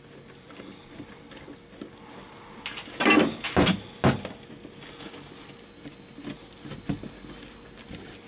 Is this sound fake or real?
real